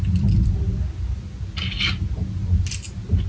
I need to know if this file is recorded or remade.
recorded